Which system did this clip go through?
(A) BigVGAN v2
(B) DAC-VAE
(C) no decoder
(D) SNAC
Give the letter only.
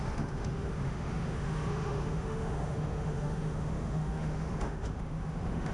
B